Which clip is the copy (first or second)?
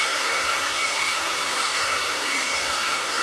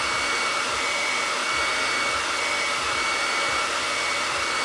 first